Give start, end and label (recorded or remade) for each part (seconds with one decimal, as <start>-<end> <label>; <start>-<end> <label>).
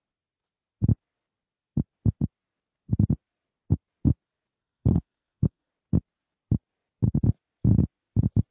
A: 0.0-4.6 recorded; 4.6-5.7 remade; 5.7-8.5 recorded